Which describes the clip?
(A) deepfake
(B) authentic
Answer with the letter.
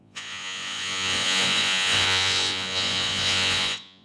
A